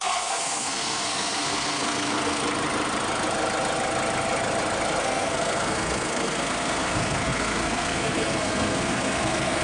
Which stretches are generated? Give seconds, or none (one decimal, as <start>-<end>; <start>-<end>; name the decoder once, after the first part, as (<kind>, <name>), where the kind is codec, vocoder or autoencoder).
0.0-2.4 (codec, SNAC); 5.0-9.6